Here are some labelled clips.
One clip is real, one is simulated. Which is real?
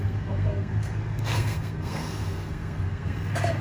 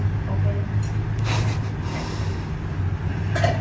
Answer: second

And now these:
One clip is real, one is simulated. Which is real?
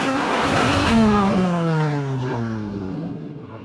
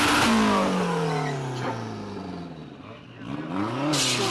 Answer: second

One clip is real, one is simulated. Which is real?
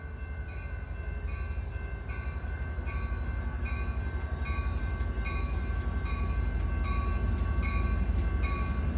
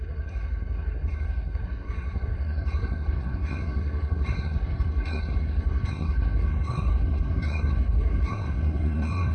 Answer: first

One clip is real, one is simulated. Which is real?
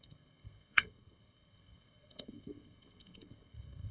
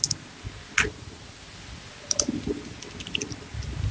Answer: second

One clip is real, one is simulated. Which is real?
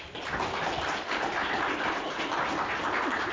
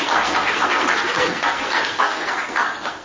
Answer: first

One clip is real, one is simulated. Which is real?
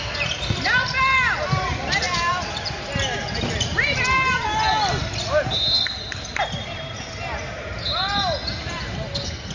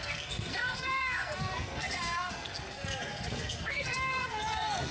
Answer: first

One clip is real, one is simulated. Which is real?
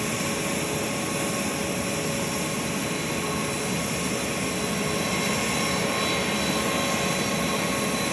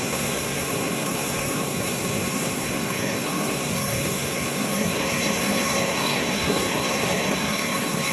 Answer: first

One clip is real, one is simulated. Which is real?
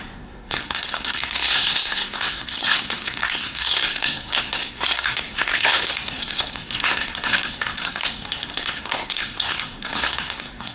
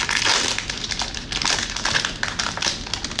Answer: second